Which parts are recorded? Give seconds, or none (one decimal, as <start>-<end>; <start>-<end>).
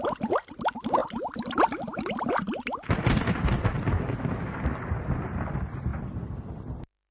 0.0-1.0; 2.9-7.1